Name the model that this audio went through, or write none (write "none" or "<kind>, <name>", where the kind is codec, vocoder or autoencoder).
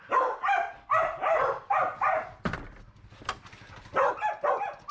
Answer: none